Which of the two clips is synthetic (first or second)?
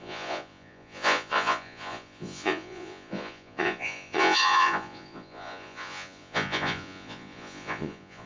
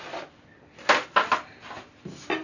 first